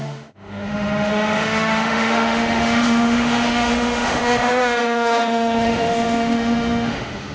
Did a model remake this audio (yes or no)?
yes